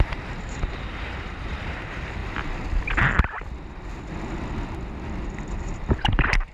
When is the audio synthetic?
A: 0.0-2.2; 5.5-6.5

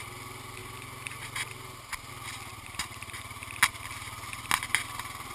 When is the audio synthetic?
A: 2.5-3.6

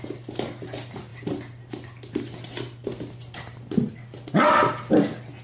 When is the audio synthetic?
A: 1.1-4.3

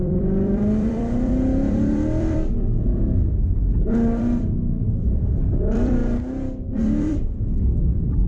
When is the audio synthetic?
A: 0.0-6.0; 6.8-8.3

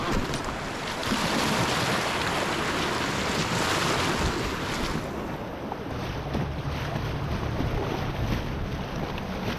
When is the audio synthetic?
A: 1.0-1.8

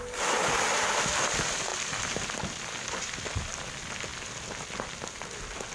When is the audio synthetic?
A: 1.7-3.6

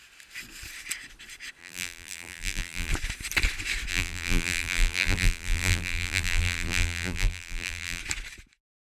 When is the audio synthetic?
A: 1.6-2.9; 3.9-8.0

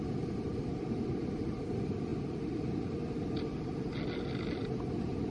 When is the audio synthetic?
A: 0.0-0.7; 1.6-2.1